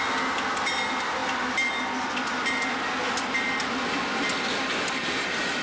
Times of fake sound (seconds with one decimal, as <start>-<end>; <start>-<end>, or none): none